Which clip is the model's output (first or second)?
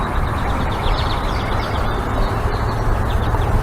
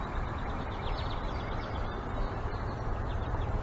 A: second